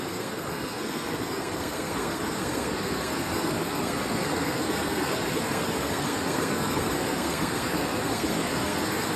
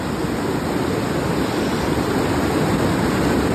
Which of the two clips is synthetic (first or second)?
first